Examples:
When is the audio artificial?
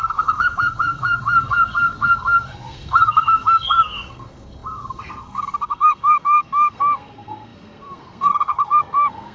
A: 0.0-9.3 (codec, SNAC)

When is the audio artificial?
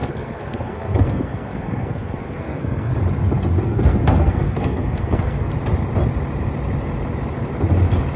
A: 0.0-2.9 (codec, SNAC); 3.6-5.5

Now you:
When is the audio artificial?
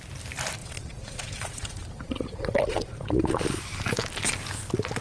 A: 0.6-3.6 (vocoder, Vocos)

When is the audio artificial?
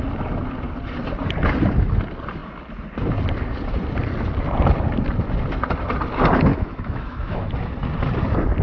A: 6.5-7.7 (autoencoder, DAC-VAE)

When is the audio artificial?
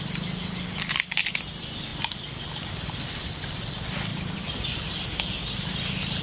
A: 4.1-5.0 (vocoder, BigVGAN v2)